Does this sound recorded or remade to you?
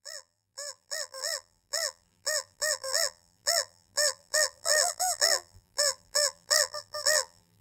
remade